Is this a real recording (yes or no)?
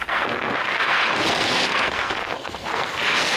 no